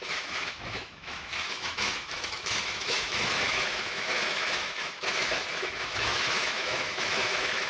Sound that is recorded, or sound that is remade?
remade